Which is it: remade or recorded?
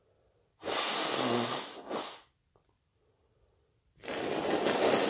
recorded